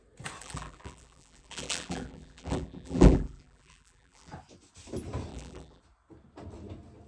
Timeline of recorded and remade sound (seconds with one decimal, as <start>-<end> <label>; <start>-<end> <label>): 0.0-0.4 recorded; 0.4-4.3 remade; 4.3-5.3 recorded; 5.3-5.8 remade; 5.8-7.1 recorded